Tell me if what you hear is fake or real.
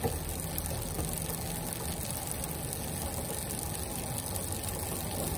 real